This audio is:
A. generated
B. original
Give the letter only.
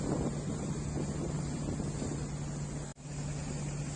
B